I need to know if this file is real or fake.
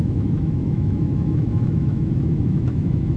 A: fake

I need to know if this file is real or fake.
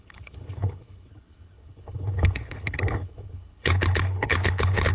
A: fake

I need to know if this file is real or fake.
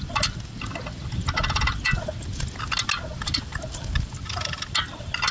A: real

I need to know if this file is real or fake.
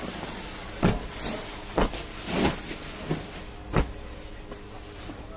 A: real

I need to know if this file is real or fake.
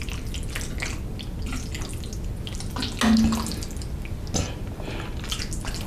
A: real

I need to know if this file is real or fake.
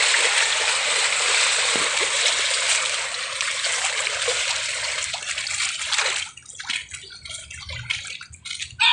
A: real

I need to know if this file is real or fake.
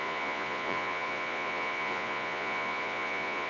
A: fake